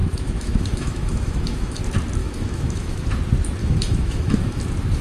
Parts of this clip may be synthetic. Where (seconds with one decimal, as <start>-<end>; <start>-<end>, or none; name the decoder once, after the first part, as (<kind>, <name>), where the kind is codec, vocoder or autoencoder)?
0.0-1.8 (autoencoder, DAC-VAE); 2.2-3.1; 3.6-4.6